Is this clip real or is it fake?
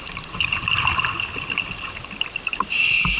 real